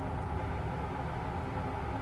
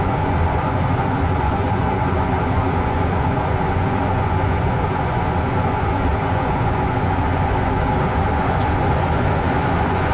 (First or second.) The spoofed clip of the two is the second